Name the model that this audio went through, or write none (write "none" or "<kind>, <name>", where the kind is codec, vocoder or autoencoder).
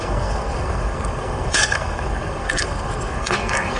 codec, SNAC